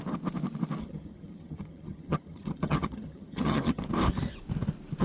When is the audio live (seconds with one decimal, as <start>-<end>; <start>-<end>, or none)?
0.0-0.8; 3.8-5.0